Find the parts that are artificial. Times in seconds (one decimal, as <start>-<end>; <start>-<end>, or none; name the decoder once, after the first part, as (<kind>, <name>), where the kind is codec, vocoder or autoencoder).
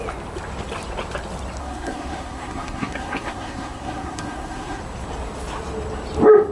1.6-4.8 (codec, SNAC)